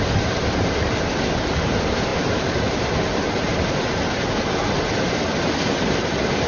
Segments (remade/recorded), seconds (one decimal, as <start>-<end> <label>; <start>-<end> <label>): 0.0-6.5 recorded